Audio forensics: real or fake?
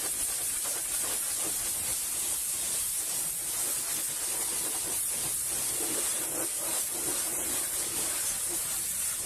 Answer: real